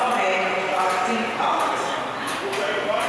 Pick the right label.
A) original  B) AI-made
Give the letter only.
A